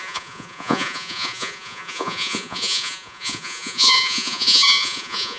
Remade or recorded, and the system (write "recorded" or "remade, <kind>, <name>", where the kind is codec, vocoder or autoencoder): remade, vocoder, Vocos